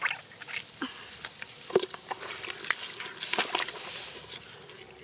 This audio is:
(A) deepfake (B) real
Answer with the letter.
B